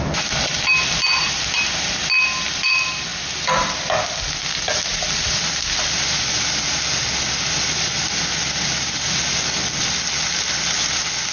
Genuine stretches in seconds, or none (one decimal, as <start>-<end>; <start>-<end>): 0.0-11.3